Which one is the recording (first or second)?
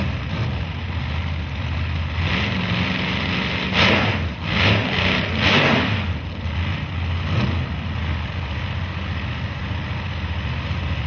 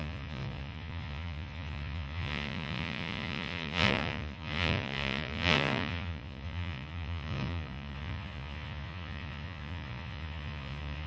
first